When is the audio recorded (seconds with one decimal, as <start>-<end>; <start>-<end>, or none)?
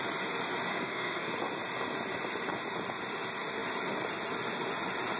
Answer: 0.0-0.7; 1.3-5.2